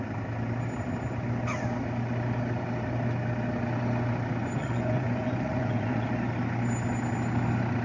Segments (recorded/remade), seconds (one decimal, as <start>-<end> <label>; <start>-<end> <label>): 0.0-4.6 recorded; 4.6-6.1 remade; 6.1-7.8 recorded